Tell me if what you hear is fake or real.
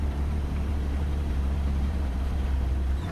fake